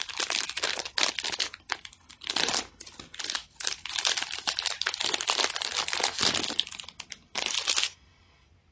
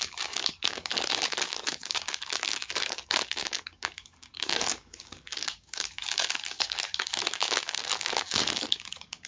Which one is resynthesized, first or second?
second